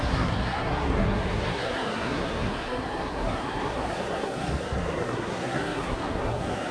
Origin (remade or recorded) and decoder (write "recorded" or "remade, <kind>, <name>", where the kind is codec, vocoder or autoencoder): remade, codec, SNAC